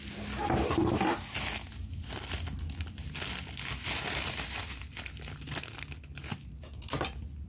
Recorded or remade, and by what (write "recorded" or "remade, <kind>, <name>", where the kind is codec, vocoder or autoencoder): recorded